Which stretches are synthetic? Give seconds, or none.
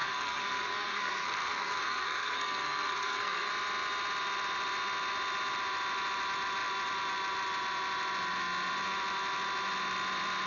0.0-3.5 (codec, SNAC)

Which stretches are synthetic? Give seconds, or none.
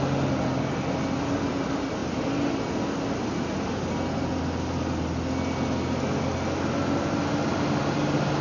none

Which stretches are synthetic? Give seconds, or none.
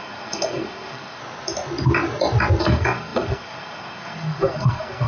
0.0-1.2 (codec, SNAC); 2.6-5.1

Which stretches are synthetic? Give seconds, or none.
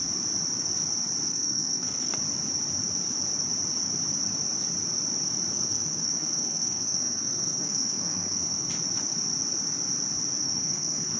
1.3-2.1 (codec, SNAC); 5.5-8.7; 10.4-11.2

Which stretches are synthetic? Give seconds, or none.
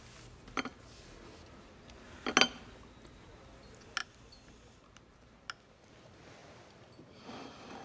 none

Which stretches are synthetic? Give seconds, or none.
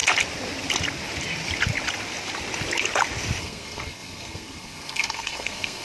3.4-5.8 (codec, SNAC)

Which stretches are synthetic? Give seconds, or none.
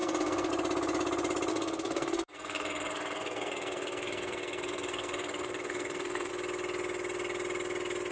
0.0-0.5 (codec, SNAC); 1.5-6.3